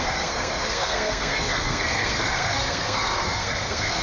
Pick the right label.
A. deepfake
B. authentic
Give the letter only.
A